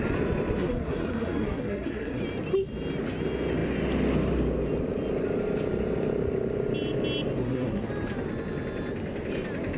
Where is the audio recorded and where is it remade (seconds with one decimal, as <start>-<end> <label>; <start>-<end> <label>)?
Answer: 0.0-0.6 recorded; 0.6-2.2 remade; 2.2-7.4 recorded; 7.4-7.9 remade; 7.9-9.8 recorded